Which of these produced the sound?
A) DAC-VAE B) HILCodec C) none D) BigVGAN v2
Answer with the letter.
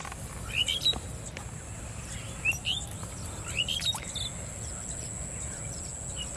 C